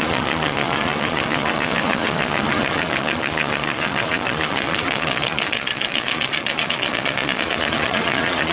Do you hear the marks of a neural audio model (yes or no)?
yes